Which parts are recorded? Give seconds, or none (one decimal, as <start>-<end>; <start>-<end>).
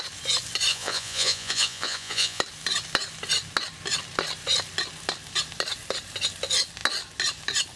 0.0-0.7; 2.4-7.8